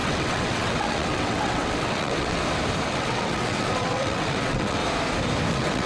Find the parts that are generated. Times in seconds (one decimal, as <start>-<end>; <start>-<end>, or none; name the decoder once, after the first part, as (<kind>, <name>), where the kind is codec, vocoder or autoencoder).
0.0-2.4 (vocoder, WaveNeXt); 2.9-4.8; 5.5-5.9